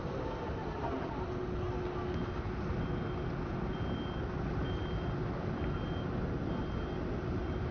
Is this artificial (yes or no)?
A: no